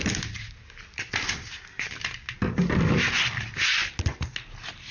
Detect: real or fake real